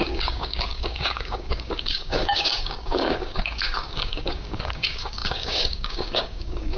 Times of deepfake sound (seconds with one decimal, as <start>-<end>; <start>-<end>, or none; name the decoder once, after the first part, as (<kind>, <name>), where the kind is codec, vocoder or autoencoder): 0.0-6.8 (codec, DAC)